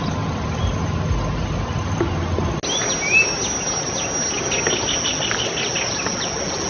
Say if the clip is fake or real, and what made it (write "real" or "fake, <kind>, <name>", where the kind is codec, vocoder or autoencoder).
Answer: real